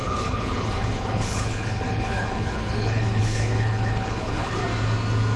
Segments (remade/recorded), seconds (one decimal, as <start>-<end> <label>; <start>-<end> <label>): 0.0-4.6 remade; 4.6-5.4 recorded